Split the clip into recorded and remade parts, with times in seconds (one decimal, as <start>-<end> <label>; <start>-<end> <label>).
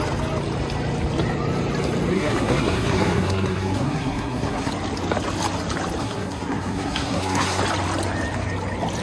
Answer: 0.0-2.1 recorded; 2.1-4.7 remade; 4.7-6.0 recorded; 6.0-7.6 remade; 7.6-9.0 recorded